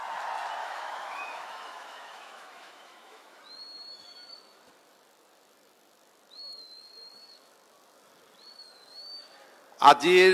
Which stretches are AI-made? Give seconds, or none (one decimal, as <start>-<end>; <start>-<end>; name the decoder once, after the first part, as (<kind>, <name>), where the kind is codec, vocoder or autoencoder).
0.6-3.4 (autoencoder, DAC-VAE)